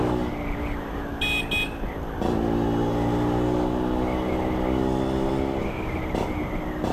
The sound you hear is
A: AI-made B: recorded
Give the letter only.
B